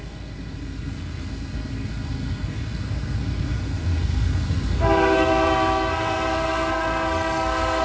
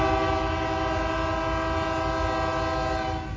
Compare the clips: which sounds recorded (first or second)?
second